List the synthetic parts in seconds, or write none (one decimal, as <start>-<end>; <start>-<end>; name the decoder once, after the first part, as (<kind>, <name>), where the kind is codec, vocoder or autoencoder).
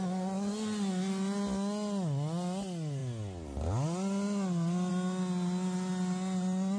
none